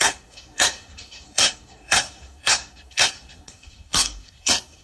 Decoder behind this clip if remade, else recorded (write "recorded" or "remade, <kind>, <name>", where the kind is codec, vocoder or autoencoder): remade, codec, SNAC